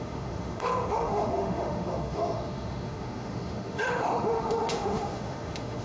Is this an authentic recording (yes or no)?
no